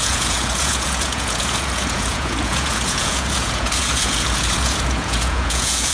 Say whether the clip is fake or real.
fake